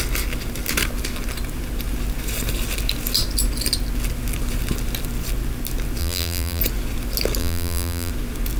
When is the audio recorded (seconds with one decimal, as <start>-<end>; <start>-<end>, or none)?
0.0-6.0; 6.6-7.4; 8.1-8.6